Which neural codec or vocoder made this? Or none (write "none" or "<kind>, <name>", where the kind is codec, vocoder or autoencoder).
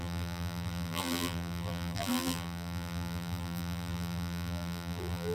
vocoder, BigVGAN v2